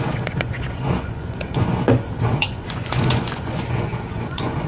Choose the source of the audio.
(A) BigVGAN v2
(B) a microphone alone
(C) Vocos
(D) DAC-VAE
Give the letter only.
C